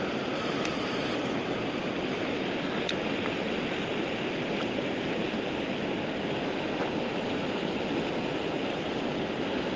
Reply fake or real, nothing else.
real